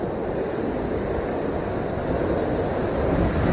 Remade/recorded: recorded